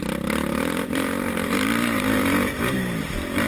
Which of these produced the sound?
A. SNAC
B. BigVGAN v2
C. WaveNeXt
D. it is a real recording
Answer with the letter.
B